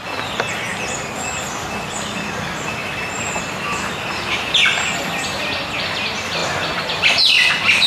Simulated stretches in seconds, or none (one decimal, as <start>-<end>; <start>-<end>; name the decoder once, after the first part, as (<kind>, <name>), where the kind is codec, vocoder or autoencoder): none